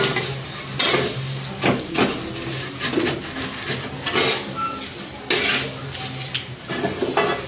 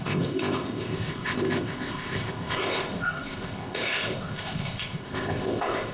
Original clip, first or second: first